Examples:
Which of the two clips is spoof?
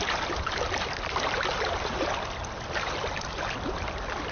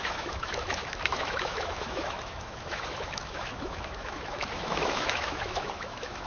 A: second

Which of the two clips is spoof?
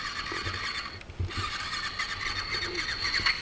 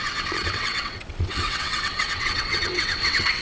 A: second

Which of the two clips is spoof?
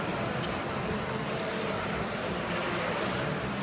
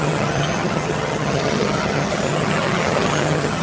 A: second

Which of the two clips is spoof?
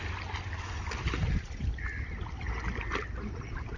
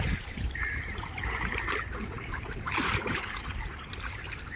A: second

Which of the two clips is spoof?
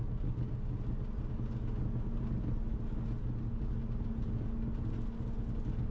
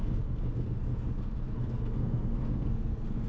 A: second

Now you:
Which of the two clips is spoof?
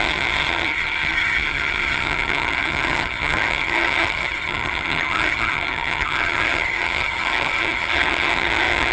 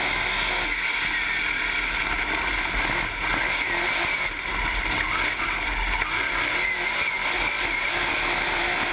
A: first